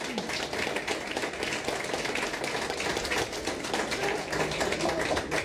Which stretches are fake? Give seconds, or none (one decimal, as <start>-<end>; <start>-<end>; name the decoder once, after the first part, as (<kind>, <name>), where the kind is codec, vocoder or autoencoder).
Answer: 1.2-4.4 (vocoder, BigVGAN v2)